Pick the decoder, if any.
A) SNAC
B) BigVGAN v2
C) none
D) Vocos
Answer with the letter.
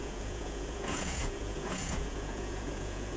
D